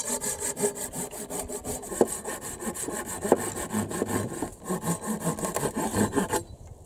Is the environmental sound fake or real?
real